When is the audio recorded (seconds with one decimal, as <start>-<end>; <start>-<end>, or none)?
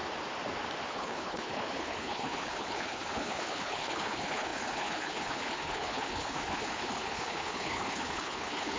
0.0-0.9